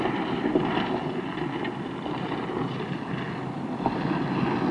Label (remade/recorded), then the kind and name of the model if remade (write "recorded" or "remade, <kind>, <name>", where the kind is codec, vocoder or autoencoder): recorded